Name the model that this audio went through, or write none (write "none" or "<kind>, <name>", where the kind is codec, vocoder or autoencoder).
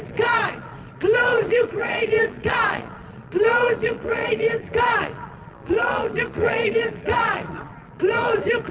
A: vocoder, Vocos